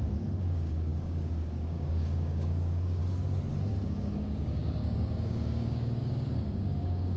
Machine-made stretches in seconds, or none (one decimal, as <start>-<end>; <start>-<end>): 0.0-3.0; 3.7-7.2